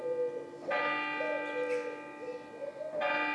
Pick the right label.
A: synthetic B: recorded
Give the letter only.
B